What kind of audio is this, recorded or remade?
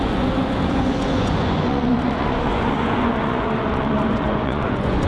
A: remade